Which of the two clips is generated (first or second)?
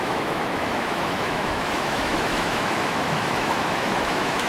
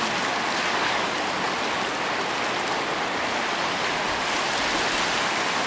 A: first